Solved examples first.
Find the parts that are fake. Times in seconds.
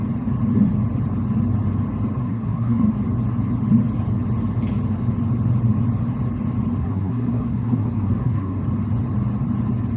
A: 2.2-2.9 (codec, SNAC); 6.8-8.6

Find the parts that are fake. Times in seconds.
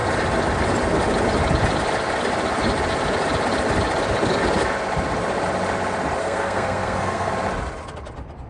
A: 6.2-7.3 (codec, SNAC)